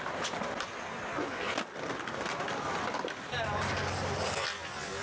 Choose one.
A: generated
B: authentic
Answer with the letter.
B